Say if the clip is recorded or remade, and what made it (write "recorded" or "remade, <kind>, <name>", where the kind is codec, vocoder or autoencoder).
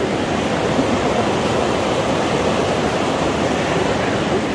remade, vocoder, BigVGAN v2